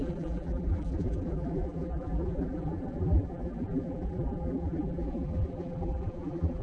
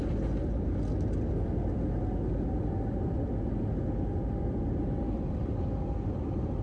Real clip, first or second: second